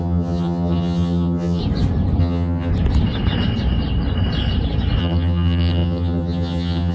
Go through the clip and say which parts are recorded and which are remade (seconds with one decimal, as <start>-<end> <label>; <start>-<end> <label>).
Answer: 0.0-1.6 remade; 1.6-2.2 recorded; 2.2-2.7 remade; 2.7-5.0 recorded; 5.0-6.9 remade